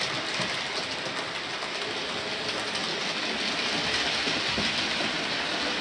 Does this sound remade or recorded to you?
recorded